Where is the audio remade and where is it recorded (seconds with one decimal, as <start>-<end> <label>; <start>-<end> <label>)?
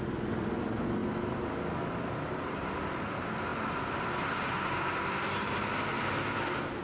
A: 0.0-6.8 recorded